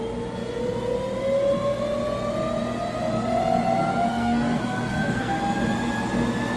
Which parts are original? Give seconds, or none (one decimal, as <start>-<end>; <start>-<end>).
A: 0.0-4.1; 5.4-6.6